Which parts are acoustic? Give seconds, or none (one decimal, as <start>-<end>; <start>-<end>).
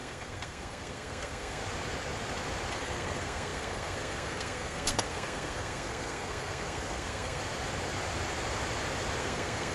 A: 1.6-2.7; 7.4-9.2